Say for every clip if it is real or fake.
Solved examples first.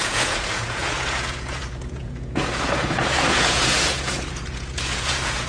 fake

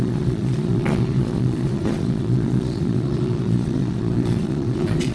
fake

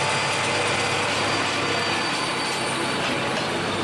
real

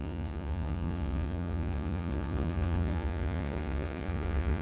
fake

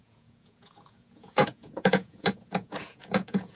fake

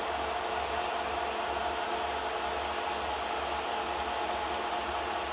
real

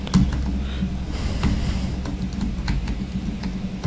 real